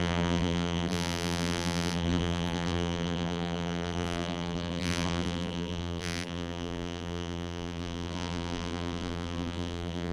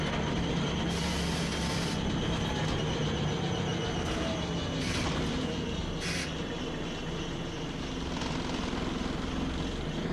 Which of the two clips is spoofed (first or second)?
first